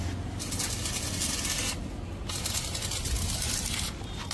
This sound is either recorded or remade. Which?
recorded